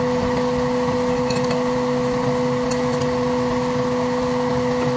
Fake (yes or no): no